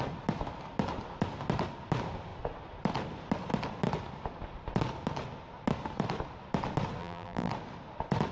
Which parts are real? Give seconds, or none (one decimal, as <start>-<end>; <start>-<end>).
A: 0.0-7.0; 7.5-8.3